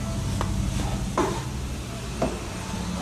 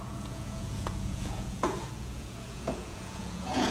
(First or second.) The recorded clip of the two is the first